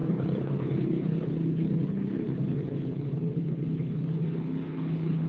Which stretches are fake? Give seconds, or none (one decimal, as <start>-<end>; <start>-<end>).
0.0-5.3